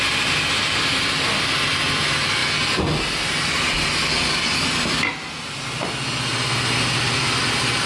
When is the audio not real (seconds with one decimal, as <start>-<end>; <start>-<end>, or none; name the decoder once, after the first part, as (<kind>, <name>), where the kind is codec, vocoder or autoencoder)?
none